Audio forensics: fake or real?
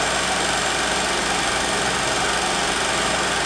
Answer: real